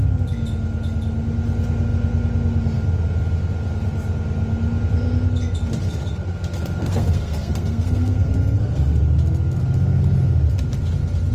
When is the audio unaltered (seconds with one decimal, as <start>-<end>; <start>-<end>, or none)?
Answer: 0.0-6.8; 9.0-11.3

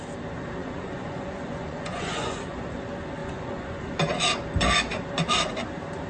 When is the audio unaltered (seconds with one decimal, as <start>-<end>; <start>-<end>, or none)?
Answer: 0.0-0.6; 2.8-3.2; 3.9-6.1

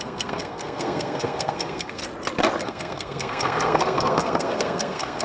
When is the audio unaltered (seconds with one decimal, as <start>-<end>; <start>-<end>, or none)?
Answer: 2.0-2.6

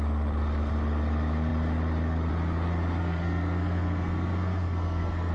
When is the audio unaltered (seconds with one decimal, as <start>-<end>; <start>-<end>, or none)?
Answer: 0.0-3.0

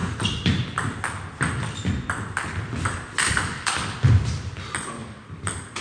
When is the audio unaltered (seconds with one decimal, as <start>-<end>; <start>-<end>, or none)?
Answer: 0.0-5.8